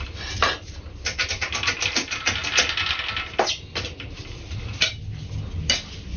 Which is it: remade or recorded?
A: recorded